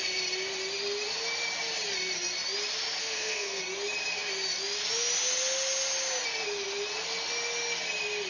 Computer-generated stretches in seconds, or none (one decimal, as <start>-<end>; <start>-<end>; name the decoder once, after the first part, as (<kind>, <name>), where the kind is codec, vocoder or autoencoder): 3.0-3.6 (codec, SNAC)